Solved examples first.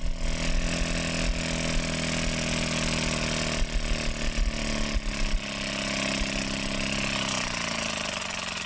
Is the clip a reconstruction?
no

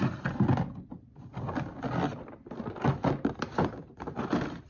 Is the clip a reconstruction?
no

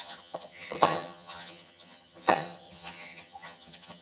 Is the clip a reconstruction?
yes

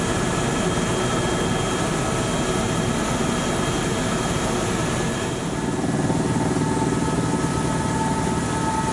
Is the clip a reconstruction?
no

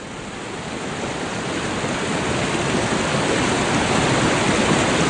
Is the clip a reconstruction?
no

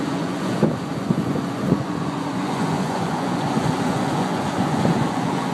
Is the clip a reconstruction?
yes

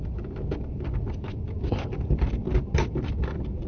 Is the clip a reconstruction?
no